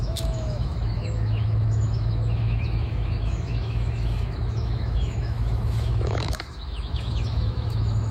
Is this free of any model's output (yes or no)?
no